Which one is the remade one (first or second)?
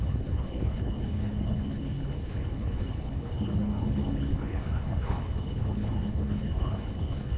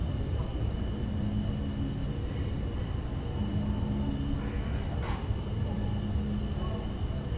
first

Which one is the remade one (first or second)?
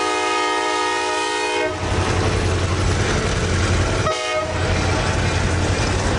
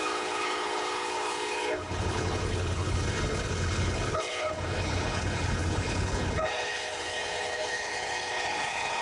second